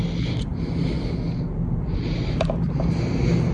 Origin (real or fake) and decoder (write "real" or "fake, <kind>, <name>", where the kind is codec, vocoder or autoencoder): real